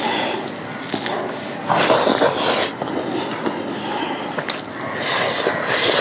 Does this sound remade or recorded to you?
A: recorded